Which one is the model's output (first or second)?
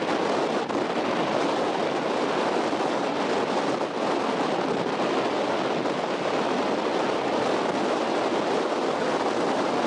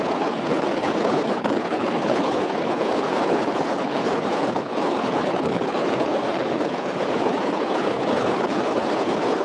second